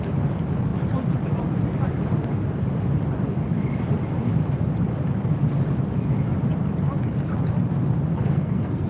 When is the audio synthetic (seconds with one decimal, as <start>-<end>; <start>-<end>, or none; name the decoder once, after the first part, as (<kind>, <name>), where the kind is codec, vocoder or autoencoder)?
8.2-8.9 (codec, SNAC)